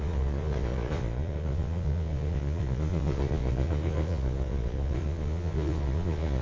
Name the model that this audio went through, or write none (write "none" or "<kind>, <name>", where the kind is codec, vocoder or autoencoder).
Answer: vocoder, Vocos